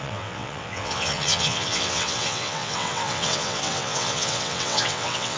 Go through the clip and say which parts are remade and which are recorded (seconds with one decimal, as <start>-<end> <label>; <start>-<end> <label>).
0.0-5.4 remade